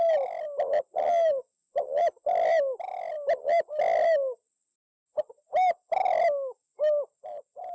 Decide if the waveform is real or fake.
real